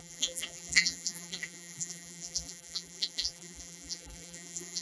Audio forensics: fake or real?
fake